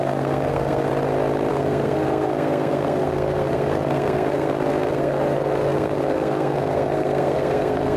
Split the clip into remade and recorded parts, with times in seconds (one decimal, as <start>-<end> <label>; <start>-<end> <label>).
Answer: 0.0-0.9 remade; 0.9-1.5 recorded; 1.5-8.0 remade